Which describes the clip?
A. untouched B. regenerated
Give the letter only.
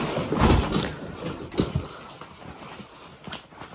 A